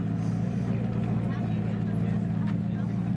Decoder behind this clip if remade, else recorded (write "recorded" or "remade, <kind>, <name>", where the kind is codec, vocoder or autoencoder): recorded